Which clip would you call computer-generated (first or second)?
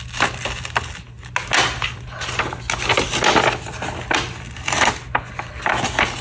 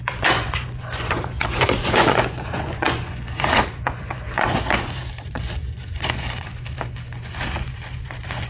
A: second